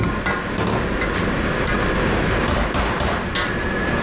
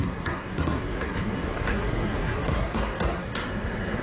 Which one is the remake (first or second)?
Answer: second